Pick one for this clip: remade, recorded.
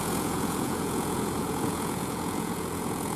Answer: remade